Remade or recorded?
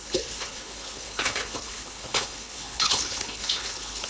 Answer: remade